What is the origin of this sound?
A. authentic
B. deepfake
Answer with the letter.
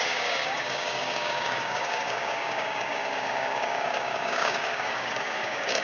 B